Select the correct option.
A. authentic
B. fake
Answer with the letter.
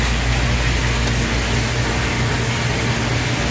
A